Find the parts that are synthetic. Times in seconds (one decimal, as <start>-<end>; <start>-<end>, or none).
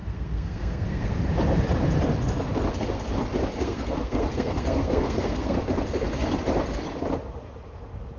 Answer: 0.0-1.2; 2.7-3.2; 3.6-5.6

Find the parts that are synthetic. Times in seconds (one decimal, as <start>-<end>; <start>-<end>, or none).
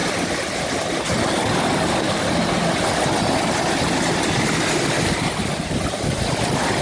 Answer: none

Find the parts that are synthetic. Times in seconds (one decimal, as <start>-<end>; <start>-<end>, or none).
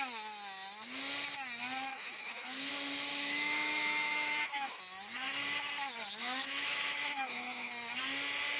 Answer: 1.9-2.7; 3.1-4.8; 6.2-7.7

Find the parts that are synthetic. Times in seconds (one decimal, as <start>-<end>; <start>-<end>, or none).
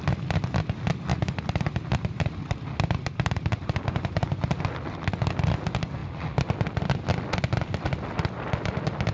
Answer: 1.1-4.6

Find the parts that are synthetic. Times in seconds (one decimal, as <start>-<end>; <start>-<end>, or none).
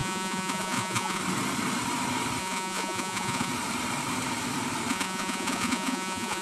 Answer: 0.0-1.2; 2.4-3.5; 4.9-6.4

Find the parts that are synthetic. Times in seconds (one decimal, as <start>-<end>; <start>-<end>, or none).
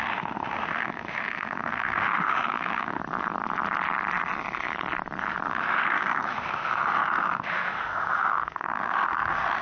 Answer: 0.0-3.0; 5.5-9.6